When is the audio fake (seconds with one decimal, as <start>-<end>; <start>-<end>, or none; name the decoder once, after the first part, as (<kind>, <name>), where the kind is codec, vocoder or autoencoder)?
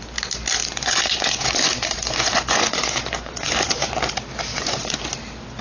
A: 0.6-4.0 (vocoder, Vocos); 4.5-5.0